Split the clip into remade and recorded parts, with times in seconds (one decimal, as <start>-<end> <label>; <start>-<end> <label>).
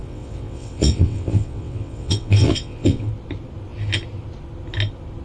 0.0-3.1 remade; 3.1-5.2 recorded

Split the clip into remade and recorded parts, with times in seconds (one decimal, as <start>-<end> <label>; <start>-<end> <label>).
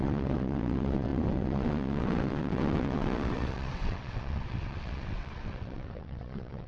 0.0-6.7 remade